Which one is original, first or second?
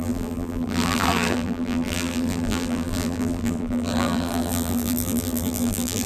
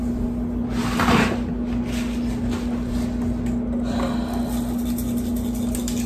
second